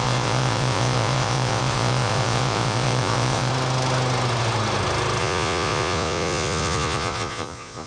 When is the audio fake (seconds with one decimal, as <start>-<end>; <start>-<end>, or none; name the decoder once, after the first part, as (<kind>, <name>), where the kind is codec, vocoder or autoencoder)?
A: 0.0-3.5 (vocoder, Vocos); 5.2-7.9